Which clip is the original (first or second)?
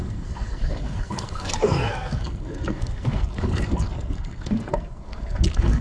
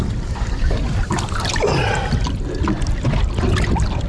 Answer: second